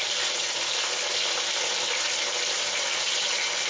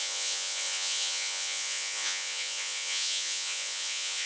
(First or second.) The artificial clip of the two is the second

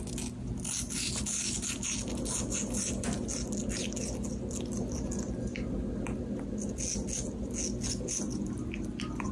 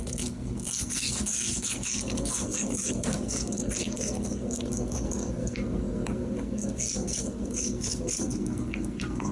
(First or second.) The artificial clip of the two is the second